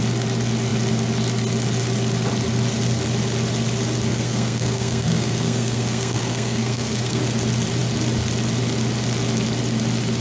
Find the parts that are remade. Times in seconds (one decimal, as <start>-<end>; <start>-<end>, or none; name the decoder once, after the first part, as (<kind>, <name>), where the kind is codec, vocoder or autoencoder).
4.1-7.2 (codec, SNAC)